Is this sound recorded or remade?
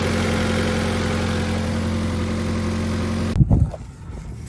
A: recorded